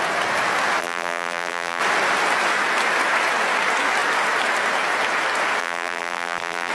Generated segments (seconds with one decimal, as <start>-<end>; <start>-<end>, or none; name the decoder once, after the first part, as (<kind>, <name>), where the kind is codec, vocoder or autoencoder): 0.8-1.8 (vocoder, BigVGAN v2); 5.6-6.7